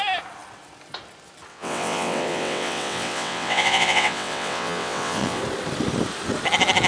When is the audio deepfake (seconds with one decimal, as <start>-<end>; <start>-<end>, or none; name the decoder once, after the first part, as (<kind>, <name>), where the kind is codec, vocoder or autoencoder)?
1.5-5.4 (vocoder, WaveNeXt)